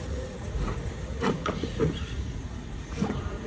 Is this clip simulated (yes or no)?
yes